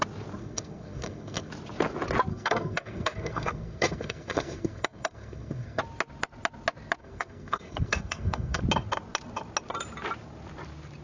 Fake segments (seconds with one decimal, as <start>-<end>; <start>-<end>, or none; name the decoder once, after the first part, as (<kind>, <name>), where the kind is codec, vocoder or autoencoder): 0.4-1.5 (codec, SNAC); 2.3-5.8; 7.0-8.6